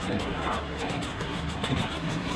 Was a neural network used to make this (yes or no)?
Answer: yes